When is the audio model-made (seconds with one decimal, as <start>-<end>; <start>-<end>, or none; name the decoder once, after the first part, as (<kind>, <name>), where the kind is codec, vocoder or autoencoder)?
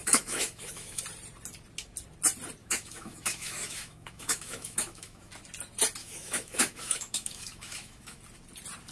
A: 0.0-1.0 (autoencoder, DAC-VAE); 2.6-5.3; 6.0-8.2